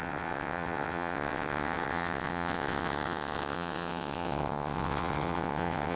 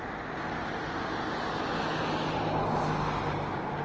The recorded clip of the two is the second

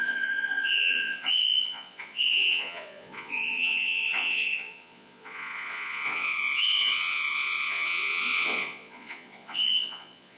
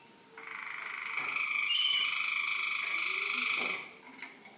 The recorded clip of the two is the second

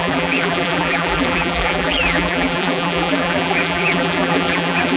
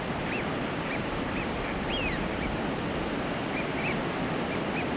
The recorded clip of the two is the second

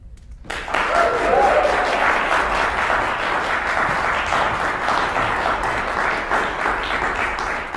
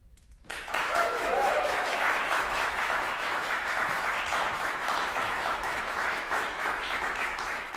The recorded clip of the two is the first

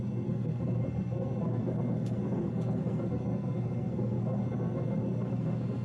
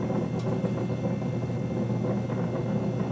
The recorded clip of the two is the second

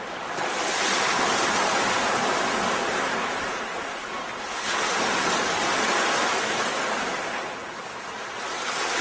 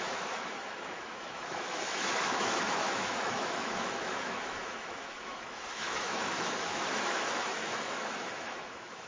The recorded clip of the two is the first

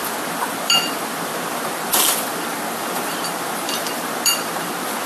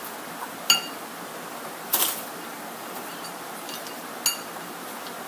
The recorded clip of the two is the second